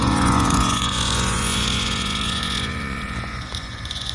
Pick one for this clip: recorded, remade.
remade